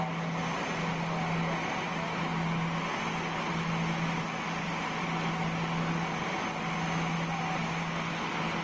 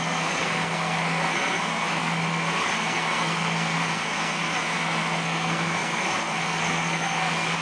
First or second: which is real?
first